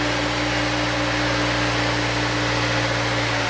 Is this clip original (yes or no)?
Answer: yes